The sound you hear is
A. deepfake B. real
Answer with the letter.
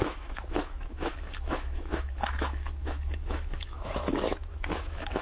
A